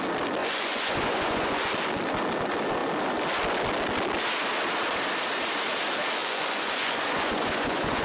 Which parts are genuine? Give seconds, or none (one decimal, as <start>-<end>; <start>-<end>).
0.0-0.4; 1.7-6.2